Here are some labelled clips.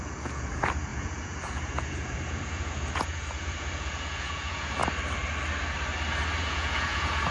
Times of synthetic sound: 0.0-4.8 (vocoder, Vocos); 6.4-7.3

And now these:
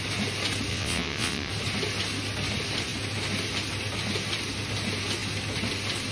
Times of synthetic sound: 0.7-1.5 (vocoder, WaveNeXt)

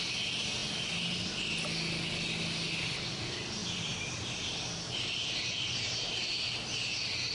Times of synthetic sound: none